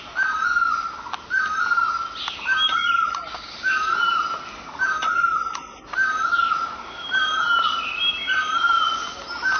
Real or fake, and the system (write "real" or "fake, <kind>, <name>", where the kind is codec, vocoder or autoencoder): real